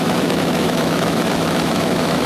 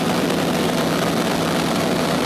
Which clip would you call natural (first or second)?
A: second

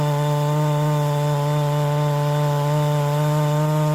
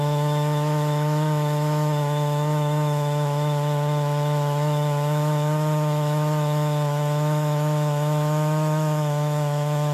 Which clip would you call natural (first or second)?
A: first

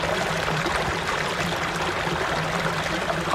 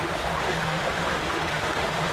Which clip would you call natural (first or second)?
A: first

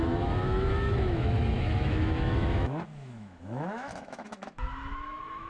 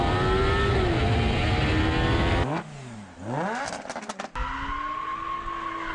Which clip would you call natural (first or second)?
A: second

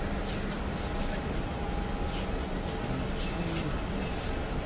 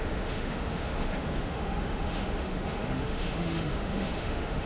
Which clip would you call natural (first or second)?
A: first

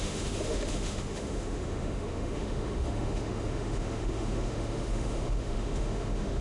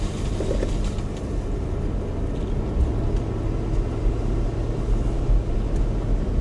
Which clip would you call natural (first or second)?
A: second